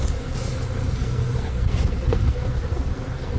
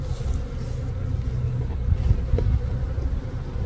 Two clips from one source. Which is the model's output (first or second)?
first